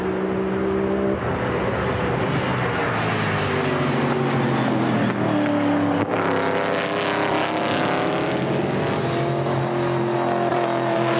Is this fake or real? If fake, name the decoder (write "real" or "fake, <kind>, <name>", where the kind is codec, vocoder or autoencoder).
real